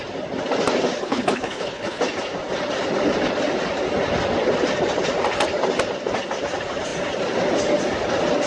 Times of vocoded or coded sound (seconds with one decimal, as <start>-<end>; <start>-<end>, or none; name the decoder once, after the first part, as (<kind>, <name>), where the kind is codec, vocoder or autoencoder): 1.0-2.0 (codec, HILCodec)